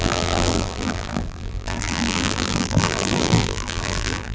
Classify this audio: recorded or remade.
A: remade